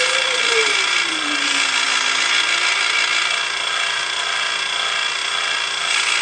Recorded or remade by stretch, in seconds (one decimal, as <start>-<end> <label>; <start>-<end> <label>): 0.0-6.2 recorded